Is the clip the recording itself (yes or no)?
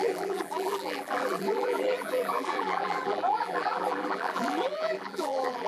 no